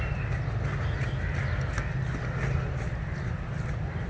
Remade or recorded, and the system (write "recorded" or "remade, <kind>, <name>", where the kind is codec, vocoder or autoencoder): recorded